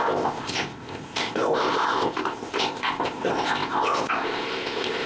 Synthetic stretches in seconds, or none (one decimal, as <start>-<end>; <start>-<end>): 0.0-5.1